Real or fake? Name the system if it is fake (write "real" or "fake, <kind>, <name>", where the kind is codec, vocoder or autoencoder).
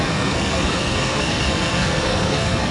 fake, codec, SNAC